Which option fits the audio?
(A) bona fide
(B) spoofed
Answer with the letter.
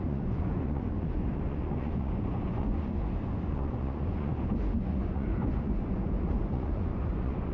B